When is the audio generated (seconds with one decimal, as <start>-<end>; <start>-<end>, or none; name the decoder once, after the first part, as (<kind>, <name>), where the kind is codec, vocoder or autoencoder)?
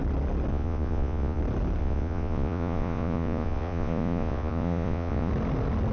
0.5-1.4 (vocoder, Vocos); 1.8-5.3